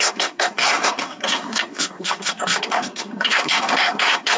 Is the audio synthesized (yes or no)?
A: yes